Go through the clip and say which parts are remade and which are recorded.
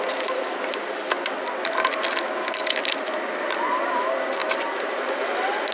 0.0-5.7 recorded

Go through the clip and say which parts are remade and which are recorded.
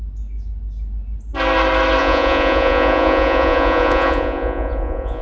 0.0-2.0 recorded; 2.0-5.2 remade